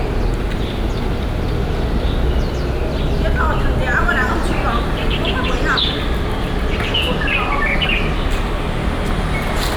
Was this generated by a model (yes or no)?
no